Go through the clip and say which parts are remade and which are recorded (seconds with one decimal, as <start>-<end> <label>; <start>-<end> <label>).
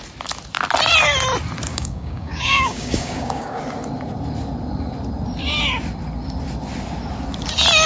0.0-1.7 recorded; 1.7-3.6 remade; 3.6-7.9 recorded